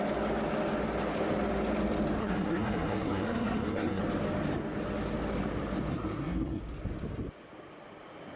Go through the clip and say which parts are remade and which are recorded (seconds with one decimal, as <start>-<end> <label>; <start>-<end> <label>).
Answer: 0.0-2.2 recorded; 2.2-4.0 remade; 4.0-5.9 recorded; 5.9-6.6 remade; 6.6-8.4 recorded